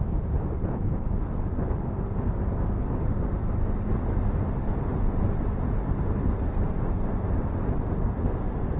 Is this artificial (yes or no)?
no